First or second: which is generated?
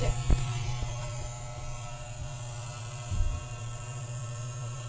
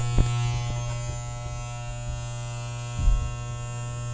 first